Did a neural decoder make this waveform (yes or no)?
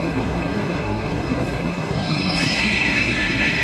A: yes